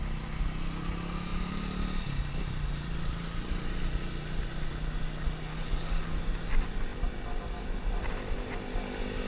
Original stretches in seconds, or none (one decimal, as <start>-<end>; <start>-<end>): 0.0-5.5; 6.2-9.3